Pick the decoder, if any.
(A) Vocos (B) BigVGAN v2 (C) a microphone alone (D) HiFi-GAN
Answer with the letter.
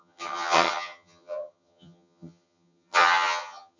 D